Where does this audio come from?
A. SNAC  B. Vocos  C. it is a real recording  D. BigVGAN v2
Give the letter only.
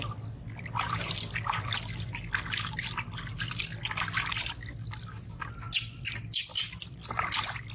C